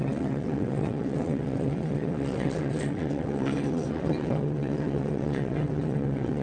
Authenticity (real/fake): fake